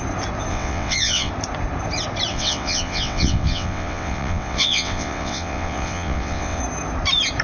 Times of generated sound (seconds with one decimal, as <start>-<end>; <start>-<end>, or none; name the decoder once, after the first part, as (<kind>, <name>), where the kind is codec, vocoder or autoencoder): 0.5-1.3 (vocoder, WaveNeXt); 2.3-6.6